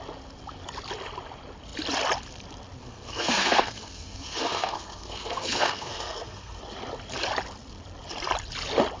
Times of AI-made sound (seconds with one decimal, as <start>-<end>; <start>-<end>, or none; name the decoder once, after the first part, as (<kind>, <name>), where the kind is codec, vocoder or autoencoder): 2.8-6.6 (codec, SNAC)